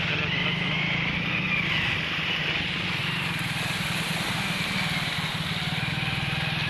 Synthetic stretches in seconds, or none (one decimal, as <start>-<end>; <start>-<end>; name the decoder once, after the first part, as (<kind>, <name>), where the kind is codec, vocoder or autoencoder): none